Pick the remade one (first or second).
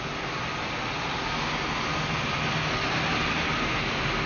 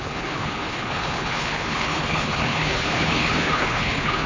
second